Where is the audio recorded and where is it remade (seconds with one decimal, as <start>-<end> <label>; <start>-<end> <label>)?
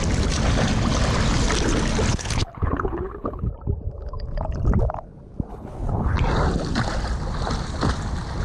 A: 0.0-2.1 recorded; 2.1-3.5 remade; 3.5-5.5 recorded; 5.5-6.1 remade; 6.1-8.4 recorded